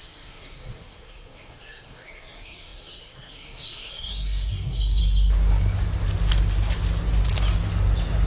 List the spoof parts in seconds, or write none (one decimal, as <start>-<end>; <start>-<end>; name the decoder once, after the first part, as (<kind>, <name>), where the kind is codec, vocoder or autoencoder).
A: 0.0-5.0 (codec, SNAC)

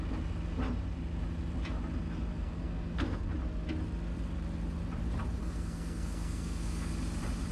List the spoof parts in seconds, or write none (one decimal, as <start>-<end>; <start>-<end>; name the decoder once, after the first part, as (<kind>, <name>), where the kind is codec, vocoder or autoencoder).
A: 2.3-3.3 (codec, SNAC); 5.4-6.9

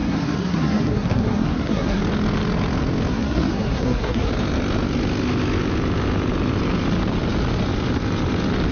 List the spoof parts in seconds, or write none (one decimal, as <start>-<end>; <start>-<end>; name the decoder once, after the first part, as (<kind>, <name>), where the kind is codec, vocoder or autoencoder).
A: 0.0-2.0 (codec, SNAC); 3.1-4.3